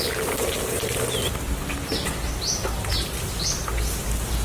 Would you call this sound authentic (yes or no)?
yes